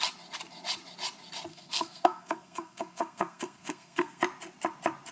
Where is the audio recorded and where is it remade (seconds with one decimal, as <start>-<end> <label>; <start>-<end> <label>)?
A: 0.0-1.5 recorded; 1.5-4.2 remade; 4.2-5.1 recorded